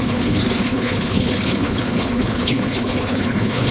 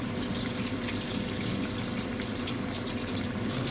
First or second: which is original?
second